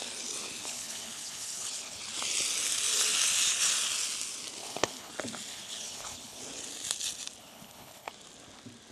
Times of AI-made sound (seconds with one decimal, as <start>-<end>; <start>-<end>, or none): 0.6-2.0; 4.6-5.1; 5.5-6.4; 7.4-8.1